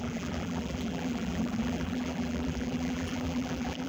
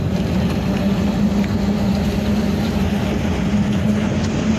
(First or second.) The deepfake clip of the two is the first